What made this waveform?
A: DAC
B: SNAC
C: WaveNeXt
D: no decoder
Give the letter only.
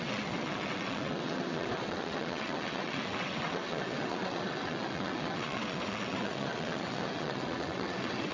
C